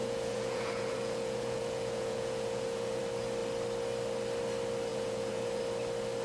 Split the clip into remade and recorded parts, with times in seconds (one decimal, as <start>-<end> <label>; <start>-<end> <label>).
0.0-3.0 remade; 3.0-4.9 recorded; 4.9-5.6 remade; 5.6-6.2 recorded

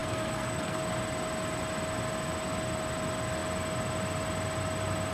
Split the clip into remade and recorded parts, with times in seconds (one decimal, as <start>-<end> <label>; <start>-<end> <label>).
0.0-0.8 remade; 0.8-5.1 recorded